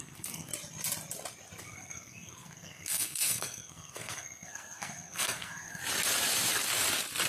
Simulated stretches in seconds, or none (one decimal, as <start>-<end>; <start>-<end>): 0.0-0.5; 1.6-5.8